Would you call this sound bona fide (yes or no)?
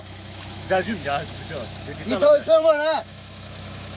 no